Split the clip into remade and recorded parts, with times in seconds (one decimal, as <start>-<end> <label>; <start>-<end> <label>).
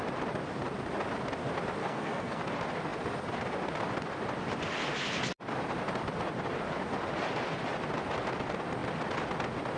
0.0-1.8 recorded; 1.8-2.4 remade; 2.4-9.8 recorded